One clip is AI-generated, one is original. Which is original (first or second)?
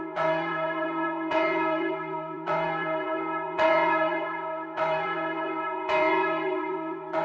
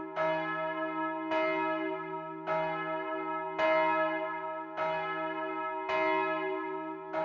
second